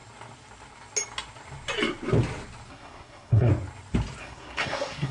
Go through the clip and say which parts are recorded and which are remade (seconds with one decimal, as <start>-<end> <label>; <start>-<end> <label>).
0.0-2.7 recorded; 2.7-3.5 remade; 3.5-4.2 recorded; 4.2-5.1 remade